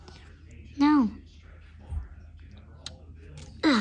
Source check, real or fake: real